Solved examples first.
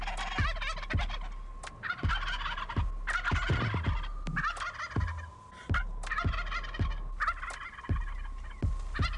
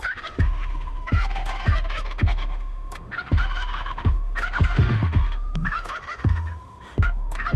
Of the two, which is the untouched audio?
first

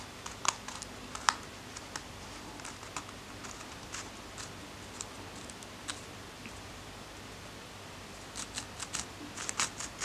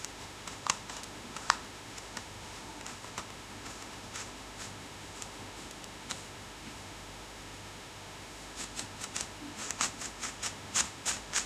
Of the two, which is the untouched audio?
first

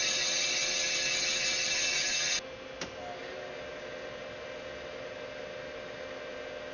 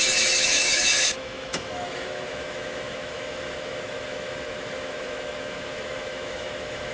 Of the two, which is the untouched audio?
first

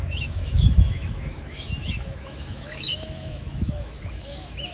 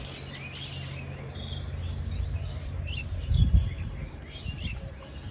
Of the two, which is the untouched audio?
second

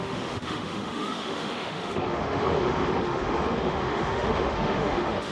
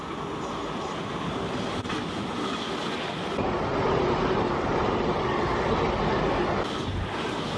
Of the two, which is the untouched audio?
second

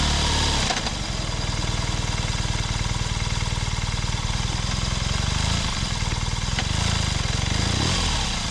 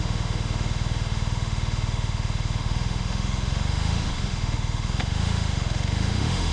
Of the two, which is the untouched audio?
first